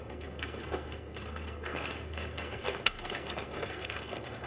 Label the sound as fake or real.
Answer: fake